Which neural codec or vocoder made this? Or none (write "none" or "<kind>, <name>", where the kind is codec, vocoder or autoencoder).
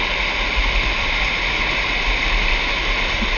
none